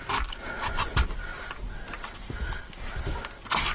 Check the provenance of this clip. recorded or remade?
recorded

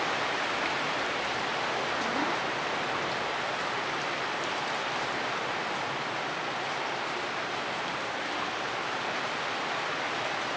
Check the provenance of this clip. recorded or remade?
recorded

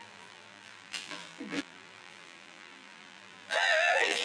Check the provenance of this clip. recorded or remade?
remade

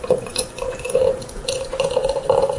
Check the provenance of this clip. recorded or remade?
remade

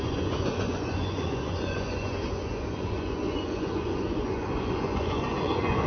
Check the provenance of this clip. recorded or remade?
remade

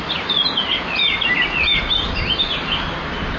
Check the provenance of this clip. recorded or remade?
recorded